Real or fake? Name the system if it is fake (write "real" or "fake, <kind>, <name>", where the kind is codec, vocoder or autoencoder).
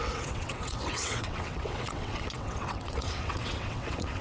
fake, vocoder, WaveNeXt